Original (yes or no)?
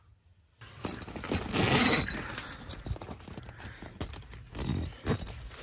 yes